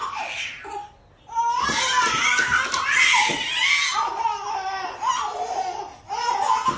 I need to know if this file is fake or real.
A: real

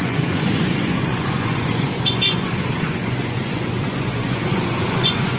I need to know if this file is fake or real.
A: fake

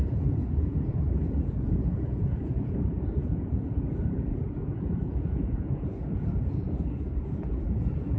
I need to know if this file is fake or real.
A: fake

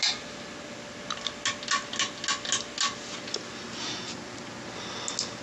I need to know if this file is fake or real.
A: real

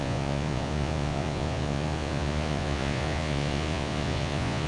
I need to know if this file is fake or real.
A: fake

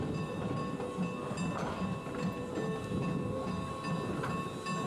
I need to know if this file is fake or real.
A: real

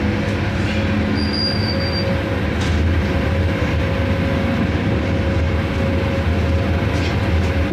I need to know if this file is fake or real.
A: real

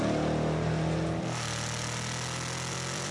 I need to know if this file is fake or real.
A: real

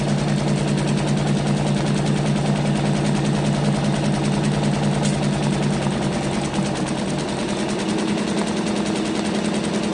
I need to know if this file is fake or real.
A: real